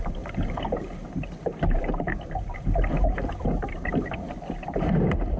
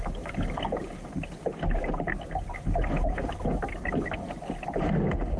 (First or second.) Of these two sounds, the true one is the second